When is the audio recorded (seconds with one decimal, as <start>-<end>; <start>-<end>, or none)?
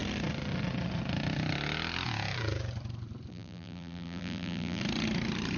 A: 0.0-3.3; 4.8-5.6